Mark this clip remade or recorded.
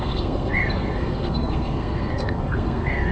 remade